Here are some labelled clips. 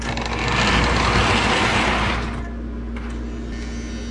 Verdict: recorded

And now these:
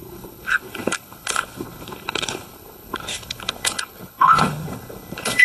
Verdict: remade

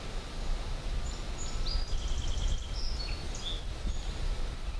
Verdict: recorded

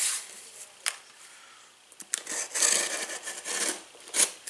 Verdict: recorded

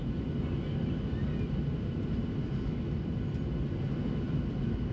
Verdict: recorded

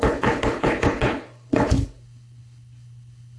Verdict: remade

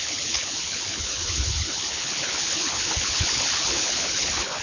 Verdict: remade